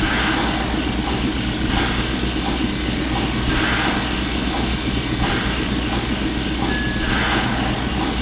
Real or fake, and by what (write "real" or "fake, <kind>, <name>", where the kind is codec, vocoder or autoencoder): real